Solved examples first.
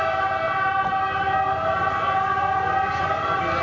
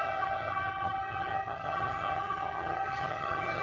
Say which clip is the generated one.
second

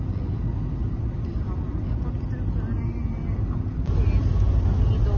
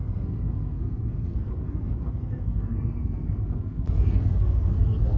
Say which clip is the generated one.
second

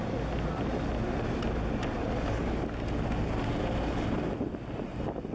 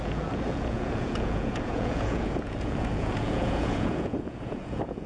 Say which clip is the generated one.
second